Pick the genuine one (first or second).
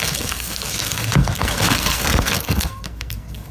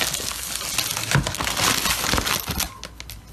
second